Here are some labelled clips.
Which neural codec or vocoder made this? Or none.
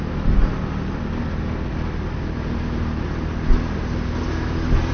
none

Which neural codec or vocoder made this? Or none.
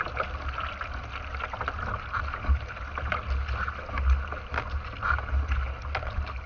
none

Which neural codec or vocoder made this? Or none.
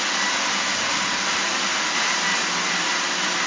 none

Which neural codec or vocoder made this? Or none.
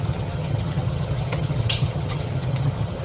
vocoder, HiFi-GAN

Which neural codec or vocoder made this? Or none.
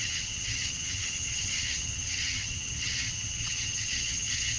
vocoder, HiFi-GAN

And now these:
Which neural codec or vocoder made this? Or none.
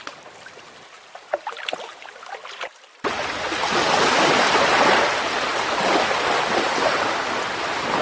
none